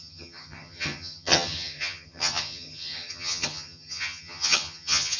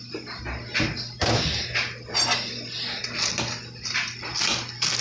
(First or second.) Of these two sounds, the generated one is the first